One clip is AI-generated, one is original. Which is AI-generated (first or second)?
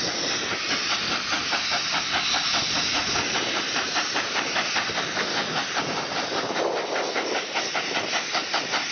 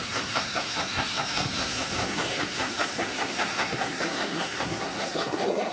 second